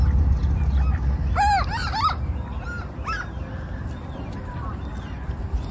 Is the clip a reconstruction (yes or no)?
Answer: no